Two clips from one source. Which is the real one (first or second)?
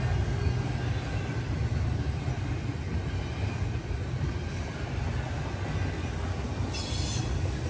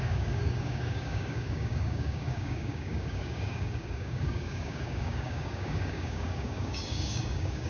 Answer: first